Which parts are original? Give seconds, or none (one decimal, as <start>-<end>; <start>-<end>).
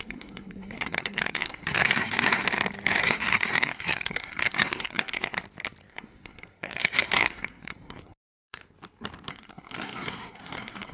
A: 2.4-3.0; 5.4-5.9; 8.6-9.3